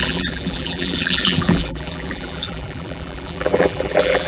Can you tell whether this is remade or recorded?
remade